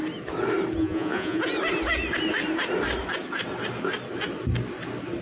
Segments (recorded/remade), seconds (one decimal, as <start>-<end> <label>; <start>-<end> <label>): 0.0-0.8 recorded; 0.8-1.4 remade; 1.4-5.2 recorded